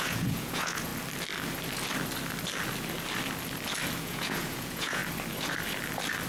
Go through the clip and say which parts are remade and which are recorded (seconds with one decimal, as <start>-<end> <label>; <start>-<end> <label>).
0.0-0.9 remade; 0.9-4.0 recorded; 4.0-5.0 remade; 5.0-6.3 recorded